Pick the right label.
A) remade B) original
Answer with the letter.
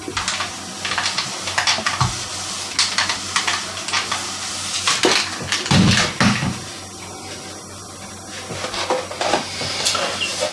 B